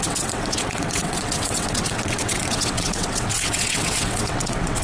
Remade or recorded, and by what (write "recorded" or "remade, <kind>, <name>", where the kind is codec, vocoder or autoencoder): remade, vocoder, WaveNeXt